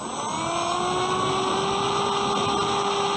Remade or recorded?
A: recorded